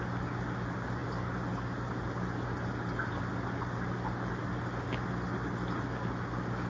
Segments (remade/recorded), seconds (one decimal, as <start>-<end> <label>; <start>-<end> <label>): 0.0-6.7 recorded